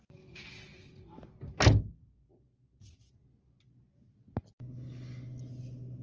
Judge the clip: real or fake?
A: real